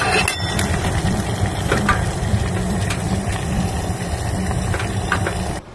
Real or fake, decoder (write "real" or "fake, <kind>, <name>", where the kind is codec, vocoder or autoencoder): real